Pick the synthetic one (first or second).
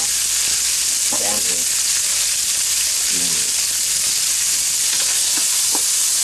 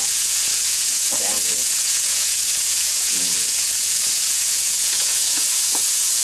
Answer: second